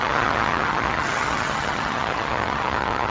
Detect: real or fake fake